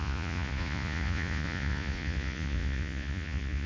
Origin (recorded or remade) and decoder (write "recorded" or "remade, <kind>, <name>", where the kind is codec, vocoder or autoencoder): remade, vocoder, Vocos